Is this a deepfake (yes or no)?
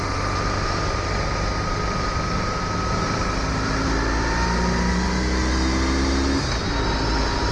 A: no